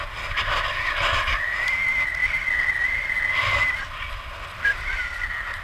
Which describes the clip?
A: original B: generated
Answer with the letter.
A